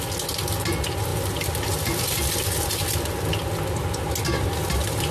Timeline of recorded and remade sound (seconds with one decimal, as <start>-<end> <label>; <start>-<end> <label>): 0.0-5.1 recorded